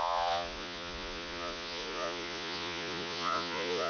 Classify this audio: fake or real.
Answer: fake